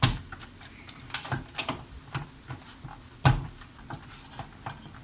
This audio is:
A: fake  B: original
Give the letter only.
B